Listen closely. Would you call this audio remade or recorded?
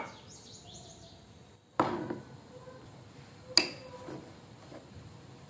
recorded